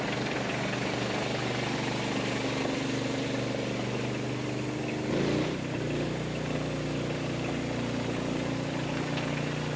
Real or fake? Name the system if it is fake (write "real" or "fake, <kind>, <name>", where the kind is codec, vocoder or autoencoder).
real